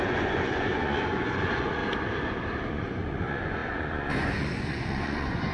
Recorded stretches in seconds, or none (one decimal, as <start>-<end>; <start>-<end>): 1.8-2.7